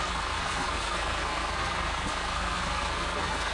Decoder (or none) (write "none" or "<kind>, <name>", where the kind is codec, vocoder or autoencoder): codec, SNAC